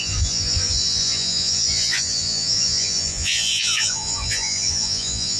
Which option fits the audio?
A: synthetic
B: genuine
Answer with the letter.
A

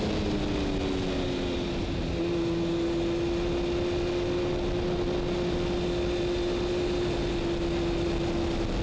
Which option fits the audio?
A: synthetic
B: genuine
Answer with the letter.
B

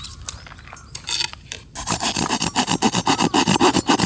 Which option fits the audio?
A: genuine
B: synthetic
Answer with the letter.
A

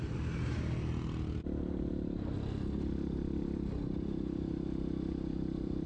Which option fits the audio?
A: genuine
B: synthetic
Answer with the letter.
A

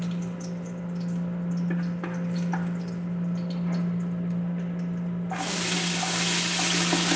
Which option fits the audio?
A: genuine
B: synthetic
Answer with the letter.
A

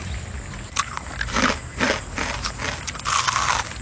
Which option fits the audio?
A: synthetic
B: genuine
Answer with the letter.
B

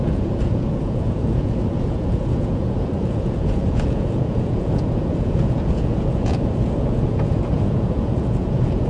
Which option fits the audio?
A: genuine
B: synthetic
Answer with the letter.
B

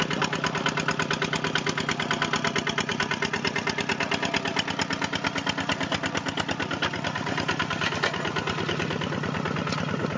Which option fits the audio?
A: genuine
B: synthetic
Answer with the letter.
A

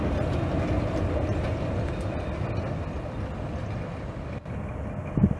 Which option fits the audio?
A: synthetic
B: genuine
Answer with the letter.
B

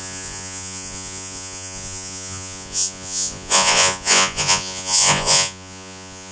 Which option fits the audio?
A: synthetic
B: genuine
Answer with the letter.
A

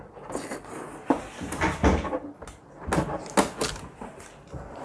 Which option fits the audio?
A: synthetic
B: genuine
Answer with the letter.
B